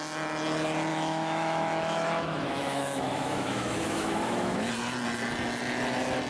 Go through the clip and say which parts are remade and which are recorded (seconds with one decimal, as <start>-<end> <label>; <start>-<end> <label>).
0.0-0.9 recorded; 0.9-4.7 remade; 4.7-6.3 recorded